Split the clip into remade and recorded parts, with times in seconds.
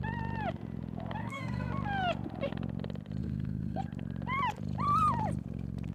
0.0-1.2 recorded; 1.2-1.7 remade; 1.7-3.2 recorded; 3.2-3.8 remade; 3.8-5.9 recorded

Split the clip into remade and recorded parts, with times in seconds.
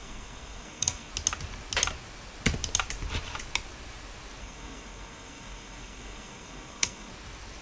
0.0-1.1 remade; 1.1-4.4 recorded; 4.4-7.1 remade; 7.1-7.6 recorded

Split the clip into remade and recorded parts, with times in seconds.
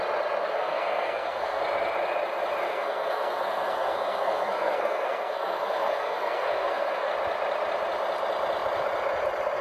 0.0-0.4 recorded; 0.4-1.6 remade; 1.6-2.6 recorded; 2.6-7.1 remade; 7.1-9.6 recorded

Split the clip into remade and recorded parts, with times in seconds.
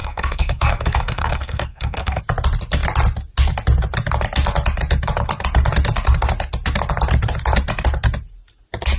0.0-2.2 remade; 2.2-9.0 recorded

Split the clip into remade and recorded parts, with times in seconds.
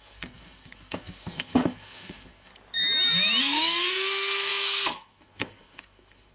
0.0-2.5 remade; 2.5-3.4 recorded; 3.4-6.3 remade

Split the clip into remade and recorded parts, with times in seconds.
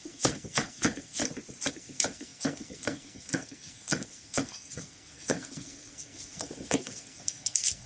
0.0-1.2 remade; 1.2-1.7 recorded; 1.7-7.9 remade